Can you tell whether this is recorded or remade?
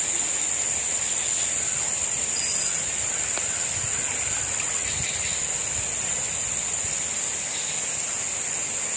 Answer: recorded